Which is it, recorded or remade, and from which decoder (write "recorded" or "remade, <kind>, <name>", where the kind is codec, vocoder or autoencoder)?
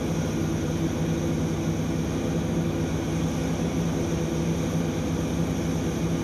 recorded